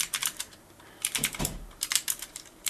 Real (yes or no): no